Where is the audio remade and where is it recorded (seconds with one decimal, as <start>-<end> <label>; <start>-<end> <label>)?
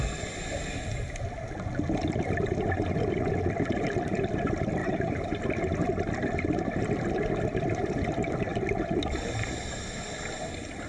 0.0-4.8 recorded; 4.8-5.4 remade; 5.4-10.9 recorded